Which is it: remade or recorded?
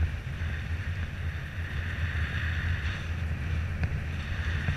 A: recorded